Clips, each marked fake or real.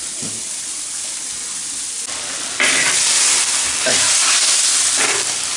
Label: real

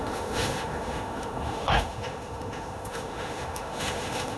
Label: fake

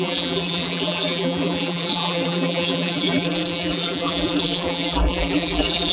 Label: fake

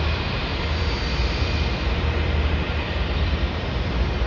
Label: fake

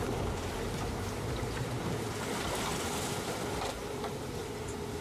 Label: real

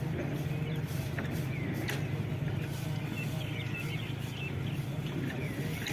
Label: real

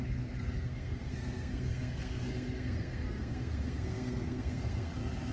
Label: fake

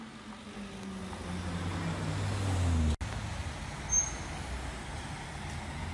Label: real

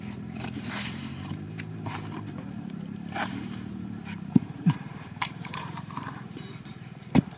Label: fake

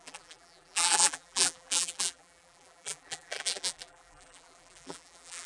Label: fake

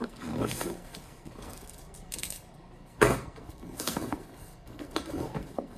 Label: fake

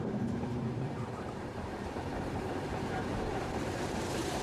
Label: fake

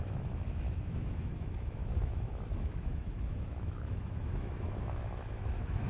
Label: fake